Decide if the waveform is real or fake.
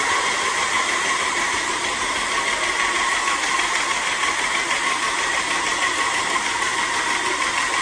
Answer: real